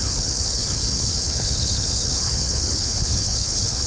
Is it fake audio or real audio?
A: fake